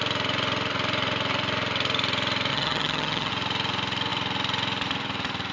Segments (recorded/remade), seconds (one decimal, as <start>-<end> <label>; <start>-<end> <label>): 0.0-2.5 recorded; 2.5-3.3 remade; 3.3-5.5 recorded